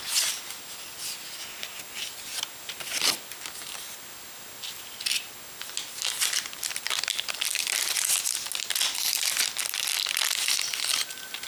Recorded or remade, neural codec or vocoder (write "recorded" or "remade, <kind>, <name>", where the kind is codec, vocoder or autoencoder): recorded